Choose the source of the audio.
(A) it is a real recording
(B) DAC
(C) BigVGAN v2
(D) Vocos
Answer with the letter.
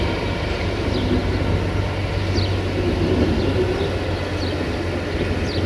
A